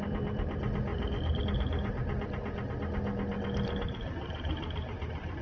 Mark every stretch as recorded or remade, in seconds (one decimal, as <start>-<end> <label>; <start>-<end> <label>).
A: 0.0-5.4 recorded